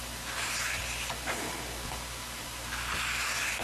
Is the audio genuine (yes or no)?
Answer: yes